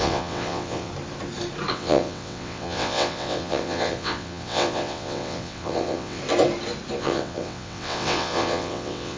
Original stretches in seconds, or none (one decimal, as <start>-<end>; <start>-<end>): 0.9-1.7; 6.2-7.0